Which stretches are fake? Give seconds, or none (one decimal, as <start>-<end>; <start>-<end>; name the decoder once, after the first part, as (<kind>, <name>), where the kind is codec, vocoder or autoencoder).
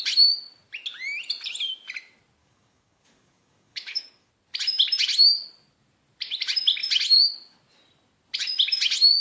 2.4-4.3 (codec, DAC)